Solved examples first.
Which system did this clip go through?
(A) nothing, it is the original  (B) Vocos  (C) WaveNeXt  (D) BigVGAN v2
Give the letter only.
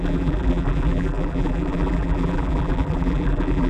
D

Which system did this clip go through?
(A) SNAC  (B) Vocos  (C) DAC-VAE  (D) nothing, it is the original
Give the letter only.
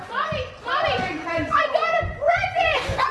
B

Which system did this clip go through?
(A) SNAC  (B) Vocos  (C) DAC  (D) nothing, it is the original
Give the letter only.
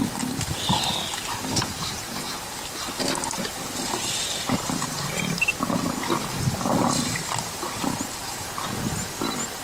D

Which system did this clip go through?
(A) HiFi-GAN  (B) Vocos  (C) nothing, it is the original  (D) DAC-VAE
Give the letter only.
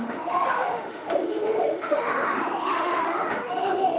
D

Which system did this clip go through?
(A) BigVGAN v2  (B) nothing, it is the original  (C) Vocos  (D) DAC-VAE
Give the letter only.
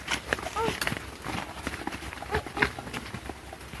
B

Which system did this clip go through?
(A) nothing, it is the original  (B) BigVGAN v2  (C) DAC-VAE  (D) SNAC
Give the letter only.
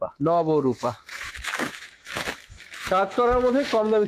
C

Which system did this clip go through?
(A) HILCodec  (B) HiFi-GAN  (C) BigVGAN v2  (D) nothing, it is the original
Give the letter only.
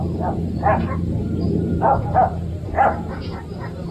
C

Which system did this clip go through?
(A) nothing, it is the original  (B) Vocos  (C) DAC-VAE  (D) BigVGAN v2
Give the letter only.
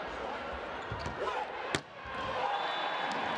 A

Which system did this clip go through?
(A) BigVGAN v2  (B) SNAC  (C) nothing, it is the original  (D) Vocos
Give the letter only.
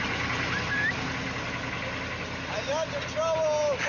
C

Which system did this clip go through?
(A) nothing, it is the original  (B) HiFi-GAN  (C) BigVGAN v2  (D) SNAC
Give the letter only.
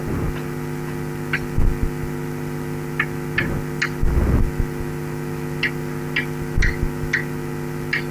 A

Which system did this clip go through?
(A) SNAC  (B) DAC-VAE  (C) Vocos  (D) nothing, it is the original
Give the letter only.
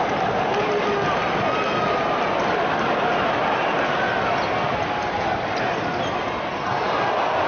D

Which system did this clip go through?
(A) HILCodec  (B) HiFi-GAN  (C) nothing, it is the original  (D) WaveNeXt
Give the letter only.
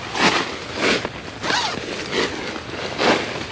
C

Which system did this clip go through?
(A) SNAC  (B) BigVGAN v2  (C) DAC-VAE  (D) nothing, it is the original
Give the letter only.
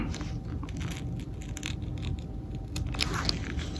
D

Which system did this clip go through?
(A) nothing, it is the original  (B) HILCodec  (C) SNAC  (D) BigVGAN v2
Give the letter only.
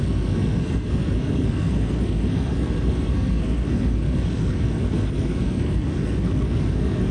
C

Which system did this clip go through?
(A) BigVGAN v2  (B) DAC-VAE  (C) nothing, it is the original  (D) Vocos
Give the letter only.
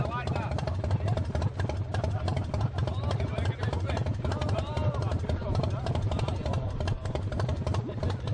A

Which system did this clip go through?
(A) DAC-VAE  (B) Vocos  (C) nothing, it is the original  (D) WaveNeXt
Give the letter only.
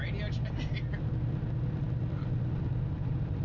C